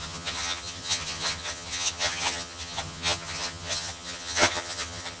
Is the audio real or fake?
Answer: fake